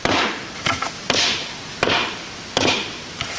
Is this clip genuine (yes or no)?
yes